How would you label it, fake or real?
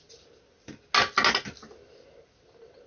real